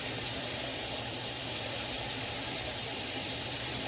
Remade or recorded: remade